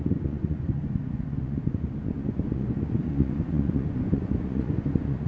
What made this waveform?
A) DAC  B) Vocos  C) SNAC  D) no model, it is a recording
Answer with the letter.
B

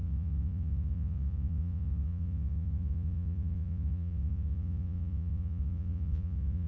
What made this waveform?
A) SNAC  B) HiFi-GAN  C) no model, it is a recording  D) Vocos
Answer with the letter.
D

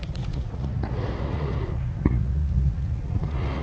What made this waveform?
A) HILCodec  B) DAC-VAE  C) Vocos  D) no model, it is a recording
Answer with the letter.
C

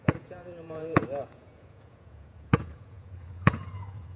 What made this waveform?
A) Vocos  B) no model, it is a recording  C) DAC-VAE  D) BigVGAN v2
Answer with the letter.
A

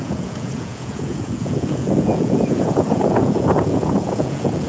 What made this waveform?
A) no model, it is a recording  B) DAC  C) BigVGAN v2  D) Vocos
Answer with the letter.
D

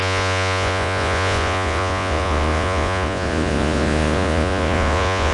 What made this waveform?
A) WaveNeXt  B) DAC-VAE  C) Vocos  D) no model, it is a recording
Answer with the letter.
C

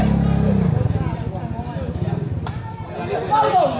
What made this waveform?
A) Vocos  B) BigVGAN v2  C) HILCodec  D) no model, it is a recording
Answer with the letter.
D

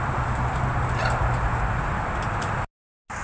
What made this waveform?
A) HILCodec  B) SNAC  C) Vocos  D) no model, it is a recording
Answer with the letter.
D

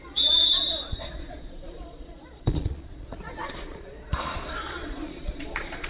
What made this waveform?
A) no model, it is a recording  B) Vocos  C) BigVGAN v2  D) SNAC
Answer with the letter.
B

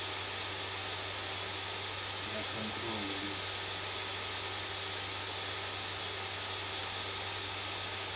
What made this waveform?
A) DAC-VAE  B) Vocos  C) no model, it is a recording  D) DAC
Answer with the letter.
C